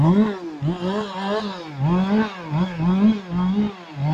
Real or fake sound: real